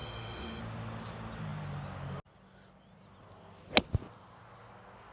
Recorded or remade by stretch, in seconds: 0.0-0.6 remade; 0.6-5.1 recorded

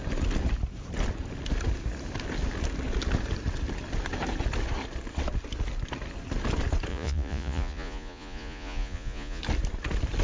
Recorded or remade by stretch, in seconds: 0.0-6.9 recorded; 6.9-9.4 remade; 9.4-10.2 recorded

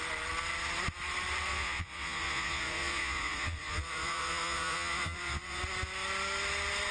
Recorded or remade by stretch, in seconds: 0.0-1.5 recorded; 1.5-5.6 remade; 5.6-6.9 recorded

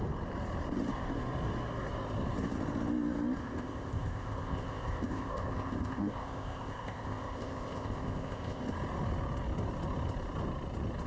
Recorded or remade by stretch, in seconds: 0.0-3.4 recorded; 3.4-8.6 remade; 8.6-11.1 recorded

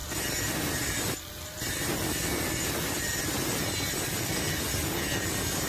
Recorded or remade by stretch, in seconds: 0.0-5.7 recorded

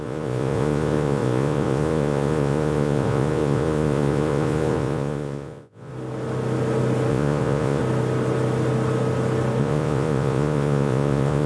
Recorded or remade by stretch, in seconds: 0.0-5.9 remade; 5.9-7.1 recorded; 7.1-7.8 remade; 7.8-9.6 recorded; 9.6-11.5 remade